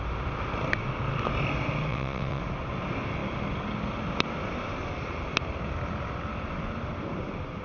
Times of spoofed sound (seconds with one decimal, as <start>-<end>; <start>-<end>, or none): 1.9-2.4